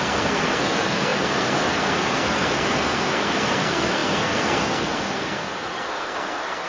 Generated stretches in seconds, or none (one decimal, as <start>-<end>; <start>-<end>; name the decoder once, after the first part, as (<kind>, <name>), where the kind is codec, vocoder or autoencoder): 0.0-6.7 (codec, SNAC)